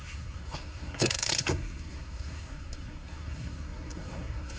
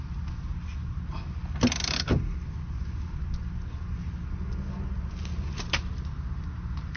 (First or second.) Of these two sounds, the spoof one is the first